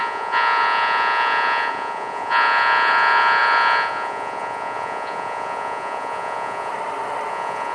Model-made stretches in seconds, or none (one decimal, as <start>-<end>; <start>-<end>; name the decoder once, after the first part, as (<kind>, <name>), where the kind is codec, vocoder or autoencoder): 0.0-6.7 (vocoder, Vocos); 7.3-7.7